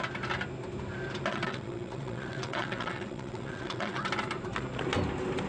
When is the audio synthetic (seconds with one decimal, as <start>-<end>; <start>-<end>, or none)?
1.3-4.1